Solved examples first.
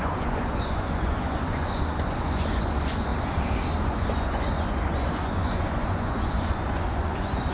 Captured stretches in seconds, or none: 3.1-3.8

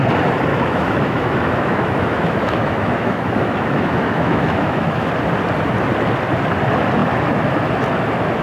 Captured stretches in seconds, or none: 0.0-0.5; 5.1-8.4